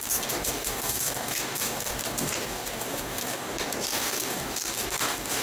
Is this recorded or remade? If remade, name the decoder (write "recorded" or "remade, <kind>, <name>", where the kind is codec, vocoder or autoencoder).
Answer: remade, codec, DAC